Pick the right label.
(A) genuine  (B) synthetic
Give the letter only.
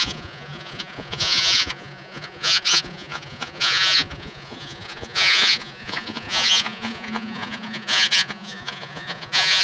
B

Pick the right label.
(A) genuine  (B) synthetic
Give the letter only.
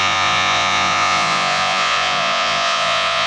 B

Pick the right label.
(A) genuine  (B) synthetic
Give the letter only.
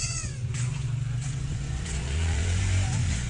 B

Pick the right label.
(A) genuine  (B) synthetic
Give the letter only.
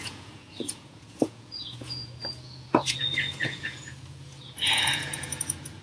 B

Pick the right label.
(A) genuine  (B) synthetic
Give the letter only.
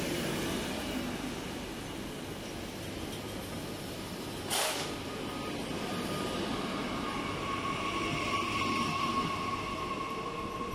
A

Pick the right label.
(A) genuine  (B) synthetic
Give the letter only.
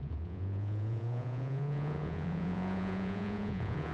B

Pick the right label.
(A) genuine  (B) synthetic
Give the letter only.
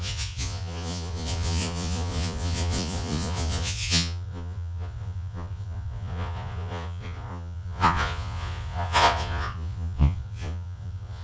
B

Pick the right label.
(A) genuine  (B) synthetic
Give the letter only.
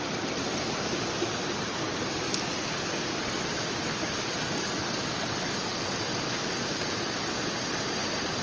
A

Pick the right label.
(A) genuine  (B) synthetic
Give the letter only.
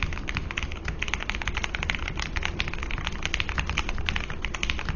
A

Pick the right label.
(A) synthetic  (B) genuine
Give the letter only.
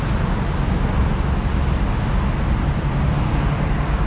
B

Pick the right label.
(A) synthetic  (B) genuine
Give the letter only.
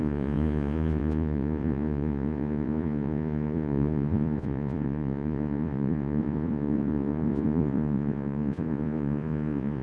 A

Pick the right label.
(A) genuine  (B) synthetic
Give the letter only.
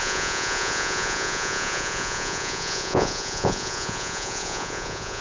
B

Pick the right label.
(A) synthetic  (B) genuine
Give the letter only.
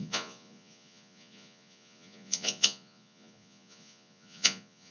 A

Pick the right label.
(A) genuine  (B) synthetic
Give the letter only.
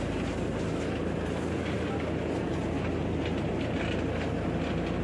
A